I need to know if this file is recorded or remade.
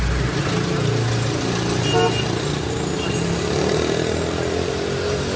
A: recorded